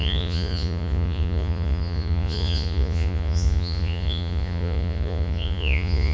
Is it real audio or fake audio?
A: fake